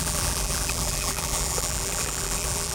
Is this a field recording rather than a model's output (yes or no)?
no